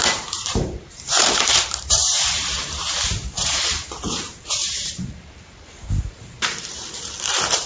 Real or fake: fake